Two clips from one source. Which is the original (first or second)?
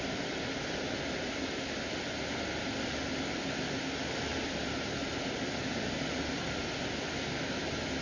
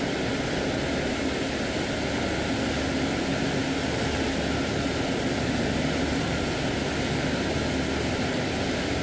second